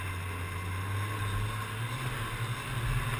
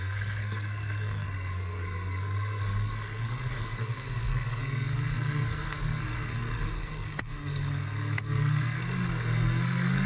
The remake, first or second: second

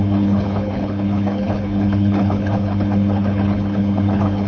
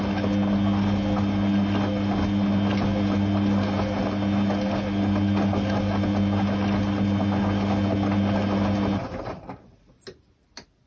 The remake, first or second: first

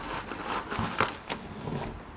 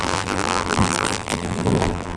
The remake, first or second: second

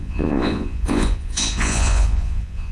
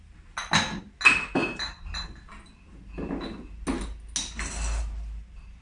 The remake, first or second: first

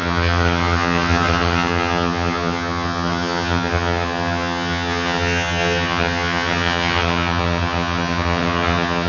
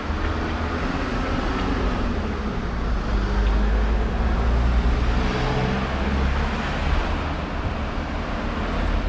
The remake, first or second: first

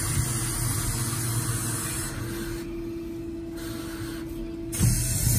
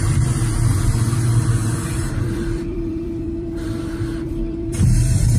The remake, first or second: second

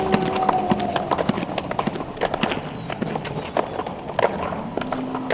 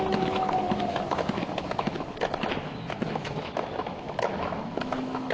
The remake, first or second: second